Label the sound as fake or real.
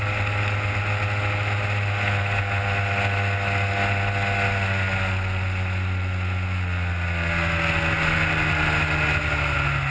real